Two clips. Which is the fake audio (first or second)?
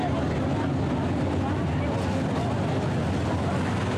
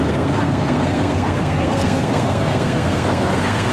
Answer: second